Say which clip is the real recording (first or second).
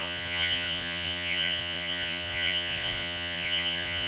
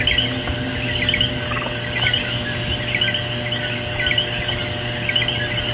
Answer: second